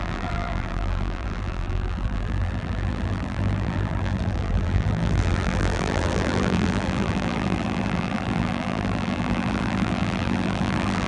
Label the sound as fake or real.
fake